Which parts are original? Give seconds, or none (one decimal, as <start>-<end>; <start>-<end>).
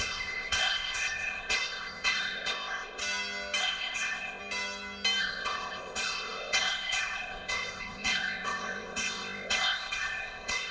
3.0-3.6; 4.4-5.2